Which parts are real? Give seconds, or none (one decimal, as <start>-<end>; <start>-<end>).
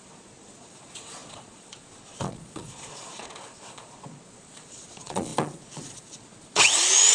none